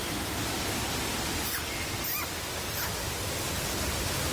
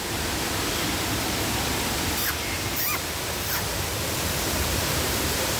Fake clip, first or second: second